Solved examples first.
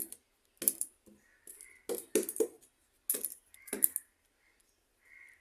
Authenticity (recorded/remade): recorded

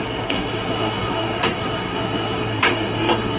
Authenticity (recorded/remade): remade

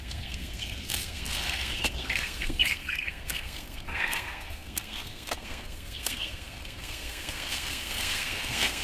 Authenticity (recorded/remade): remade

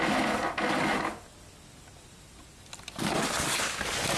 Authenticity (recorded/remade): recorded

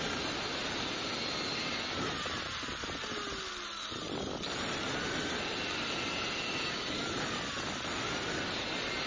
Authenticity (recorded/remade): recorded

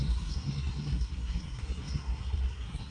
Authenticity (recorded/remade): remade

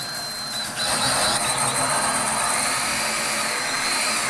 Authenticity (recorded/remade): recorded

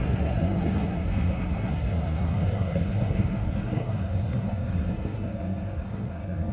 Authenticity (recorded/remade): remade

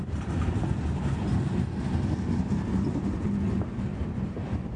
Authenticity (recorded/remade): recorded